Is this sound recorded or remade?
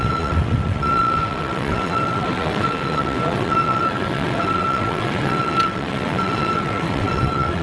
remade